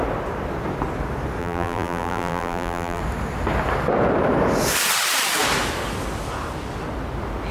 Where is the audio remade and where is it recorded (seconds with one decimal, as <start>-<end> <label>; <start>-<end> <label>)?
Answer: 0.0-1.4 recorded; 1.4-3.0 remade; 3.0-7.5 recorded